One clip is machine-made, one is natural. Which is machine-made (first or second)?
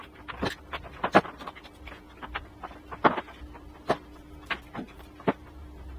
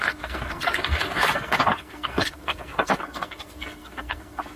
second